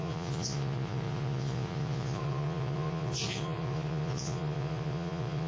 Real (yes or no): no